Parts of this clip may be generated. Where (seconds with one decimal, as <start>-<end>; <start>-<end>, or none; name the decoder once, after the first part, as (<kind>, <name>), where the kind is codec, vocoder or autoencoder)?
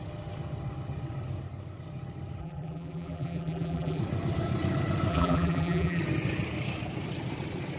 2.4-4.0 (vocoder, BigVGAN v2); 5.1-6.0